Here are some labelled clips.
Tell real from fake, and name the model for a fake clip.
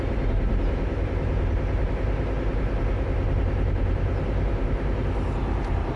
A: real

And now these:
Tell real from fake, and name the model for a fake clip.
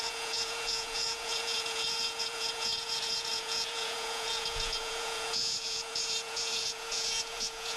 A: fake, vocoder, Vocos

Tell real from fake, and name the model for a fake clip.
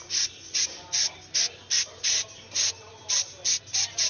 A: real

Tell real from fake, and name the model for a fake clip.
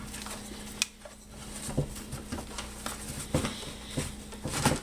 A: real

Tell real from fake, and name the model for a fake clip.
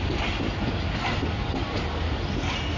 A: real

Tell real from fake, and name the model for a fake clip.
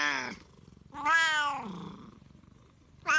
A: real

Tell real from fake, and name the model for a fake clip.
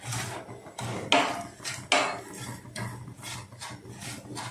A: real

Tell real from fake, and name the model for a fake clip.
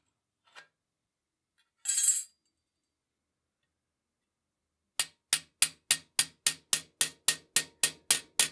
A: real